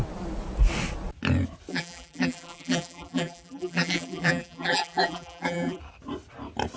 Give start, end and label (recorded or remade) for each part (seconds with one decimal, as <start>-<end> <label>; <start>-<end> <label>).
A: 0.0-1.7 recorded; 1.7-5.8 remade; 5.8-6.8 recorded